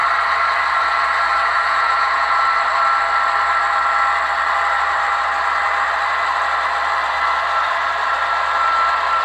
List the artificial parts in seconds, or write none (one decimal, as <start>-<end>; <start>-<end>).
1.4-2.4